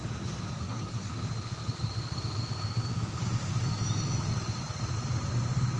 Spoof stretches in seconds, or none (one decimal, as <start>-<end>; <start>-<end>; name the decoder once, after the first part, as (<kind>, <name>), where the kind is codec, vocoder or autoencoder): 0.6-1.1 (codec, SNAC)